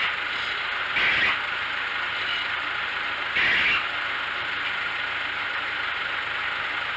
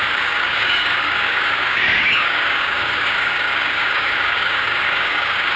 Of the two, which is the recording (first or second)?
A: first